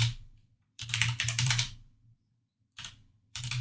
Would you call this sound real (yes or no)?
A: no